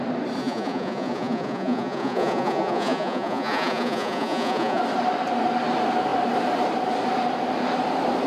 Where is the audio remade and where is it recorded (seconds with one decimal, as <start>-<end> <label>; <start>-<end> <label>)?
0.0-0.4 recorded; 0.4-4.8 remade; 4.8-8.3 recorded